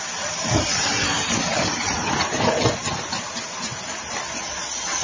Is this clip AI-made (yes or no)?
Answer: no